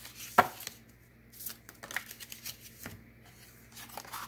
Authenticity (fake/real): real